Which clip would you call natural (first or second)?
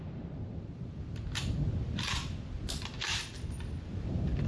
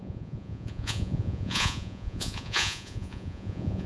first